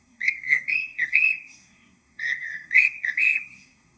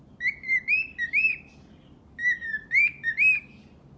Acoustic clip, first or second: second